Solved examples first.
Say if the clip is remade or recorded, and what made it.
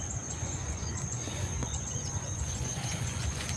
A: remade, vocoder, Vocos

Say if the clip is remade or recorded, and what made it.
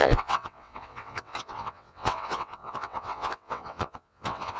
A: remade, vocoder, WaveNeXt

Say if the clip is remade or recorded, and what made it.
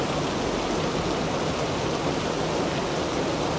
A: recorded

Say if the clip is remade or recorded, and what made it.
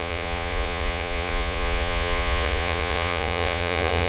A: remade, vocoder, Vocos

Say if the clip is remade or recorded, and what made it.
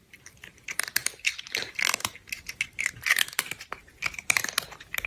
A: remade, vocoder, BigVGAN v2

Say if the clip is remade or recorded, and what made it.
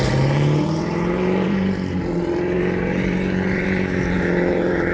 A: remade, vocoder, BigVGAN v2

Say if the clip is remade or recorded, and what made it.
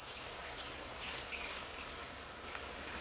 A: remade, codec, DAC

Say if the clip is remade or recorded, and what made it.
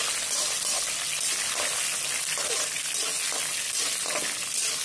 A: recorded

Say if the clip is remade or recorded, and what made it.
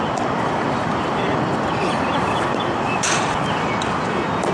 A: remade, vocoder, BigVGAN v2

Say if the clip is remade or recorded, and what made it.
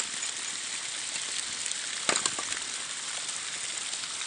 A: recorded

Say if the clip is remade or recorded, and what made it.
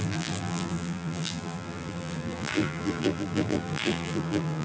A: remade, vocoder, BigVGAN v2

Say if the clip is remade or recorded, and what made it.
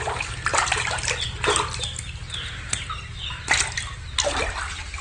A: recorded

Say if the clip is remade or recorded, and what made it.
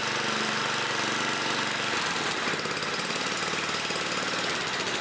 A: recorded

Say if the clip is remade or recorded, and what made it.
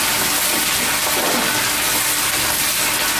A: recorded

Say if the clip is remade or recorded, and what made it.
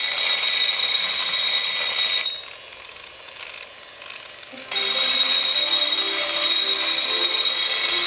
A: recorded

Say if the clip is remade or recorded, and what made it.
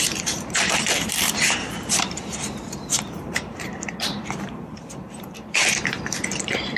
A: remade, vocoder, BigVGAN v2